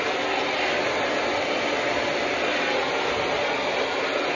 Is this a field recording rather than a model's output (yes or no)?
yes